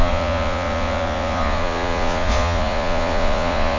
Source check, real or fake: fake